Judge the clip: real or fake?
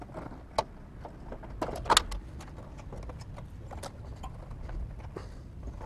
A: real